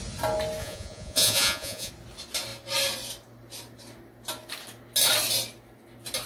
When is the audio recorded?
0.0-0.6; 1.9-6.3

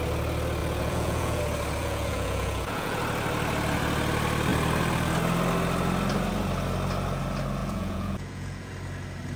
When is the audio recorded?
0.0-0.6; 1.4-1.8; 3.0-7.6; 8.7-9.4

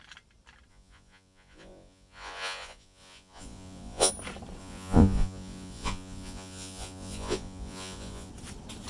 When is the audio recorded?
0.0-0.7; 4.1-4.6; 8.3-8.9

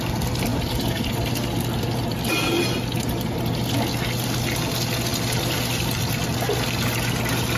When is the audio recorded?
0.0-0.5; 1.6-7.6

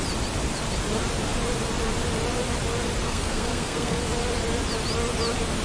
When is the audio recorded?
0.0-3.0; 4.0-5.6

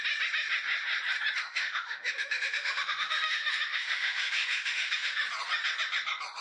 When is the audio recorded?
0.0-1.4; 5.2-6.4

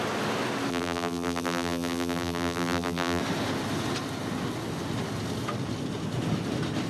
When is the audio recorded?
0.0-0.7; 3.2-6.9

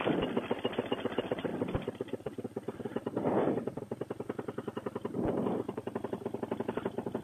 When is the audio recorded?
0.0-7.2